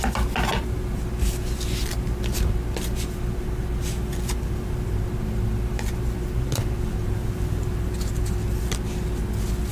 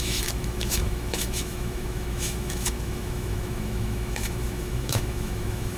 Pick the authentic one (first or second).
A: first